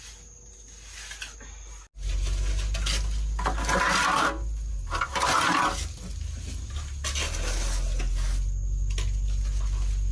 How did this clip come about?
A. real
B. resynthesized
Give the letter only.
A